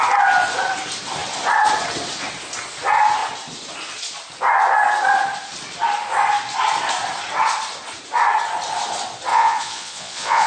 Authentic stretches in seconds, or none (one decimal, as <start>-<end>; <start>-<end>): 0.0-9.3